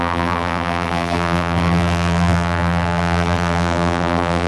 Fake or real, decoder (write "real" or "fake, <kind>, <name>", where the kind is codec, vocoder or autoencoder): fake, vocoder, BigVGAN v2